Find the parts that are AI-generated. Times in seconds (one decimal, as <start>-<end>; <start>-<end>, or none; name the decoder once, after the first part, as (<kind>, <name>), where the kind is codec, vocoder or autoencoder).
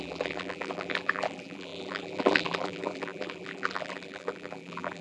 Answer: 0.0-5.0 (vocoder, BigVGAN v2)